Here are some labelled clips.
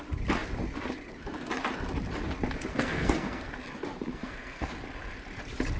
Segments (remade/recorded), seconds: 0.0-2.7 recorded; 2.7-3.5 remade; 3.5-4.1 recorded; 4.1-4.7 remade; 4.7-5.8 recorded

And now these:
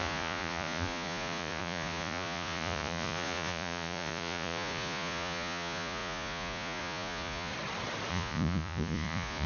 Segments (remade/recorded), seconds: 0.0-7.5 remade; 7.5-8.1 recorded; 8.1-9.5 remade

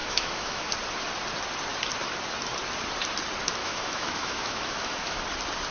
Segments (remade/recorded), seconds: 0.0-0.7 remade; 0.7-3.6 recorded; 3.6-5.2 remade; 5.2-5.7 recorded

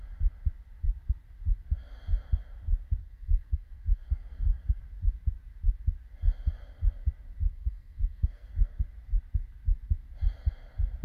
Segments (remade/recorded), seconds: 0.0-3.0 recorded; 3.0-4.8 remade; 4.8-7.5 recorded; 7.5-8.8 remade; 8.8-11.0 recorded

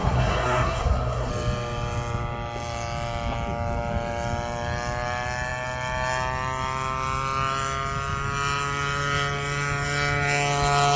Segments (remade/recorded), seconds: 0.0-1.3 remade; 1.3-11.0 recorded

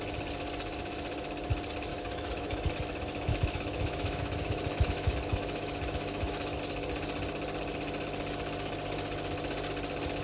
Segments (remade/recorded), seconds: 0.0-1.9 recorded; 1.9-6.6 remade; 6.6-10.2 recorded

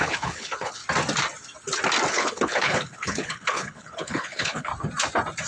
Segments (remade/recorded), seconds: 0.0-0.8 remade; 0.8-2.1 recorded; 2.1-4.7 remade; 4.7-5.5 recorded